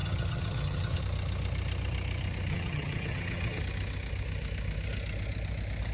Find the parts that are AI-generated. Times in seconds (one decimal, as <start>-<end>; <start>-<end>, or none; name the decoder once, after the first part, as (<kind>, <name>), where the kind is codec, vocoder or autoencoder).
0.0-1.0 (vocoder, HiFi-GAN); 2.5-3.6